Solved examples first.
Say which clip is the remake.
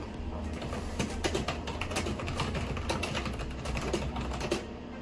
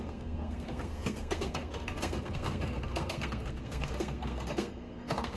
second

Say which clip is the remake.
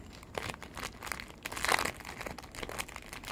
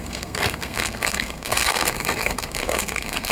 second